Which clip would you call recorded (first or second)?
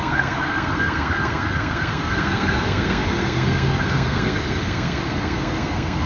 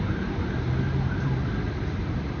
second